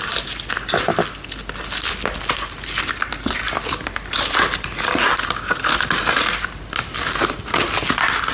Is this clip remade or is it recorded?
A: recorded